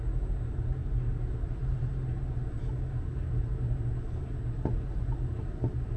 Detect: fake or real real